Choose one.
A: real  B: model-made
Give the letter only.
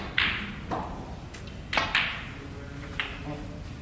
A